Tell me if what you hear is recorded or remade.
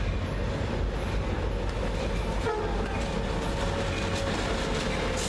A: recorded